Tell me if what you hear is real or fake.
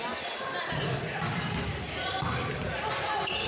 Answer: real